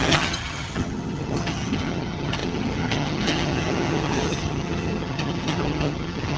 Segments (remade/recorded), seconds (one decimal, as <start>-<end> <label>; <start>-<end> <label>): 0.0-6.4 remade